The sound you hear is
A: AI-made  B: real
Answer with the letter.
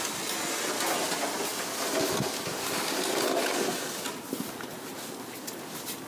B